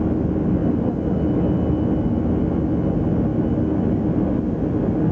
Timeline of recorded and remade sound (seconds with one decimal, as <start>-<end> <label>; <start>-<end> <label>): 0.0-5.1 recorded